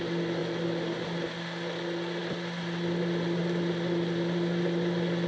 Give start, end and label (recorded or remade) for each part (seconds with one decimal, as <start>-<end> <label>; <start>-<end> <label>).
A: 0.0-5.3 recorded